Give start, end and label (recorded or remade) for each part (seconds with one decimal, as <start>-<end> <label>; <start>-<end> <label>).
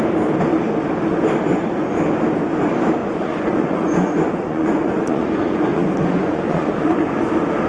0.0-1.5 recorded; 1.5-2.0 remade; 2.0-3.0 recorded; 3.0-7.3 remade; 7.3-7.7 recorded